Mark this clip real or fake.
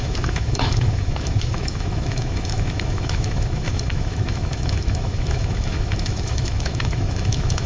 fake